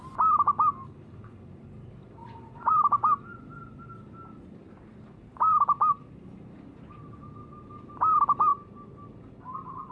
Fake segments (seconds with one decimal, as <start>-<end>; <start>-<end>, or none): 2.2-2.7